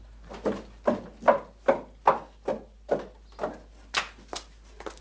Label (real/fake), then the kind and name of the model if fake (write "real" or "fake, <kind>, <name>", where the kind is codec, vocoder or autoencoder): real